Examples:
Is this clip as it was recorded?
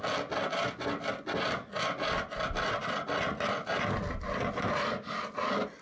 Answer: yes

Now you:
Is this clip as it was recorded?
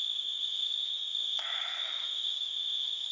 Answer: no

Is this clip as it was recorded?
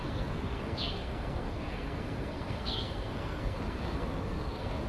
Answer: no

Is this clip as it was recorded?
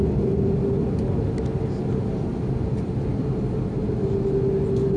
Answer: yes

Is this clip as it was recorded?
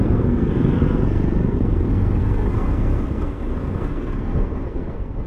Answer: no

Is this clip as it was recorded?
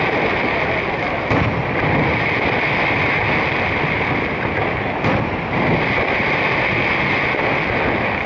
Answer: yes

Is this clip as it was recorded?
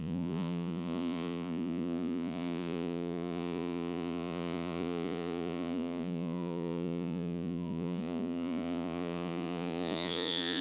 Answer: no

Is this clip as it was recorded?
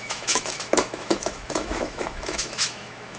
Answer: no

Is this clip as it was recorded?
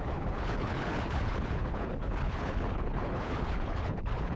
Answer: no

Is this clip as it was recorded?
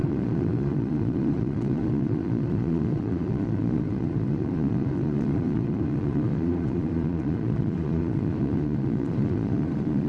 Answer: no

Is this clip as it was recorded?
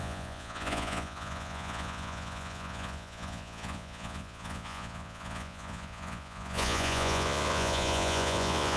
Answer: no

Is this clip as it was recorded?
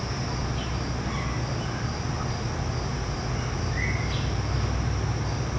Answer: yes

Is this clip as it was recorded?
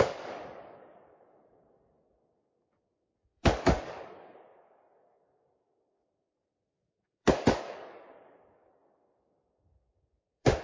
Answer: no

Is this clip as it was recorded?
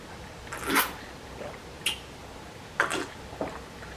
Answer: yes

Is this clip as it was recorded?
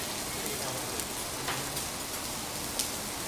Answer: yes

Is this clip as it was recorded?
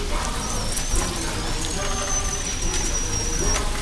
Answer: yes